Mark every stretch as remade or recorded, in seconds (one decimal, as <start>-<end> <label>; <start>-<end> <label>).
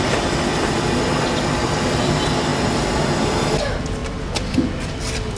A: 0.0-2.5 recorded; 2.5-3.6 remade; 3.6-5.4 recorded